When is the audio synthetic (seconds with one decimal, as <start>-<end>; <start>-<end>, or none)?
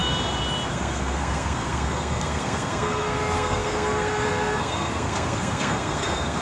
0.7-6.4